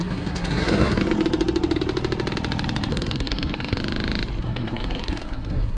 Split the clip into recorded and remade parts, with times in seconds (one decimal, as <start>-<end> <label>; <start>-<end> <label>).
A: 0.0-1.0 remade; 1.0-2.9 recorded; 2.9-3.8 remade; 3.8-4.4 recorded; 4.4-5.8 remade